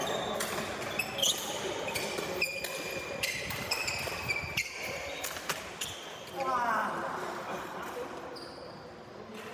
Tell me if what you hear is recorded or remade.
recorded